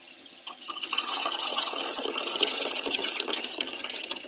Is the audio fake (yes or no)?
yes